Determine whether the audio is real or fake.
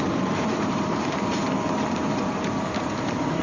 fake